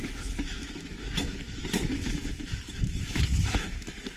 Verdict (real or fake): fake